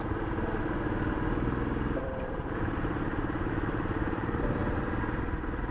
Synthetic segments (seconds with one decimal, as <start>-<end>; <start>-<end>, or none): 0.0-0.6; 2.0-4.6; 5.2-5.7